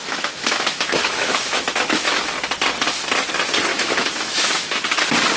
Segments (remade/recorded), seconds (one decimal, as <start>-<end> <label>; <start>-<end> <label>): 0.0-2.3 remade; 2.3-3.7 recorded; 3.7-4.8 remade; 4.8-5.4 recorded